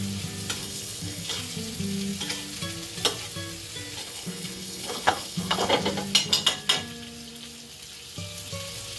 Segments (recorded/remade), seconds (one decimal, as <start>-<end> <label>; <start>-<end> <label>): 0.0-0.6 recorded; 0.6-1.4 remade; 1.4-4.0 recorded; 4.0-5.7 remade; 5.7-9.0 recorded